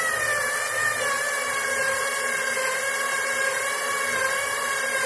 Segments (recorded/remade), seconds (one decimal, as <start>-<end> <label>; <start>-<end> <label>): 0.0-5.1 recorded